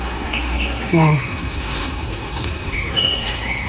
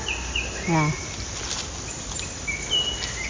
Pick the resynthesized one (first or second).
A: first